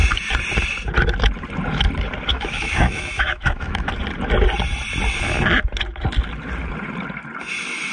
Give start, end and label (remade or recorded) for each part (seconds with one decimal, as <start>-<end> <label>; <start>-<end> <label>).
0.0-2.3 recorded; 2.3-3.9 remade; 3.9-7.9 recorded